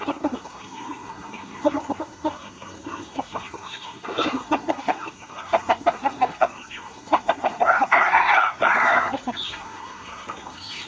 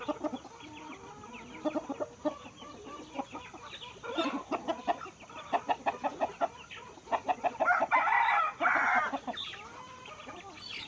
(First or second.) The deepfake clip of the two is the first